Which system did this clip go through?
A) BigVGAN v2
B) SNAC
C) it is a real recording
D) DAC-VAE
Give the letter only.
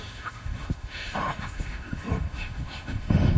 D